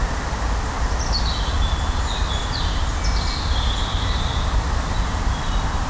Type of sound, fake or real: real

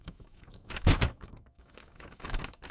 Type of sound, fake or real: fake